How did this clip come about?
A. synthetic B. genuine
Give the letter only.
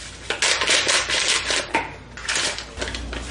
B